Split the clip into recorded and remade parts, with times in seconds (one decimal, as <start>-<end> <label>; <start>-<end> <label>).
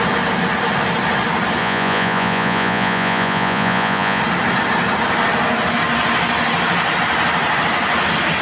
0.0-1.6 recorded; 1.6-4.2 remade; 4.2-8.4 recorded